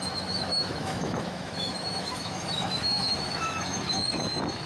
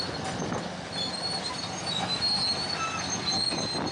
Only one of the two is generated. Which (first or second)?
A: first